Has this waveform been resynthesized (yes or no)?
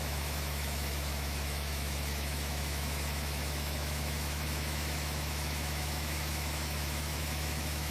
yes